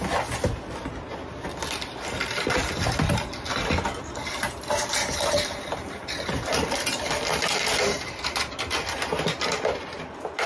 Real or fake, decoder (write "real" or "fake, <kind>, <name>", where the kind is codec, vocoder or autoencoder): real